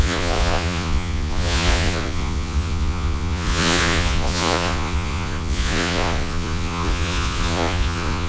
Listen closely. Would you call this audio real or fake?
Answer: fake